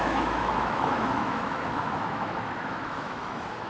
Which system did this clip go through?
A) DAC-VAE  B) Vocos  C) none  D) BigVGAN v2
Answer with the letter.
A